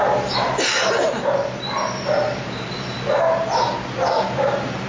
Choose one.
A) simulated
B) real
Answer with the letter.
B